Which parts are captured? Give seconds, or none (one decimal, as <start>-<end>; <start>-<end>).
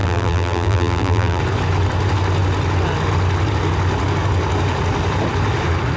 1.4-6.0